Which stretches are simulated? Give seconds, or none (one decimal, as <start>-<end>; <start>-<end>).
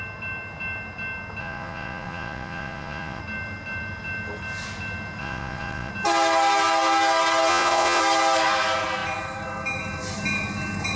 1.4-3.2; 5.2-5.9; 7.5-8.0